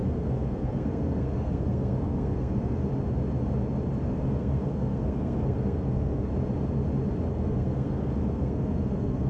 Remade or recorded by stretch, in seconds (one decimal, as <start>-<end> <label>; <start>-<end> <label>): 0.0-2.9 remade; 2.9-4.0 recorded; 4.0-6.3 remade; 6.3-7.3 recorded; 7.3-9.3 remade